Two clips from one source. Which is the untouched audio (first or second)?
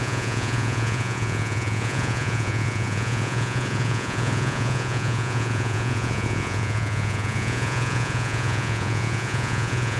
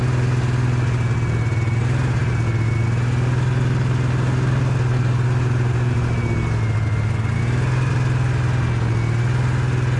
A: second